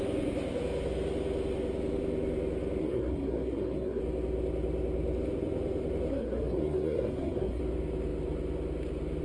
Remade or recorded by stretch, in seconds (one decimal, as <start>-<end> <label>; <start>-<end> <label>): 0.0-2.8 recorded; 2.8-4.0 remade; 4.0-6.1 recorded; 6.1-7.6 remade; 7.6-9.2 recorded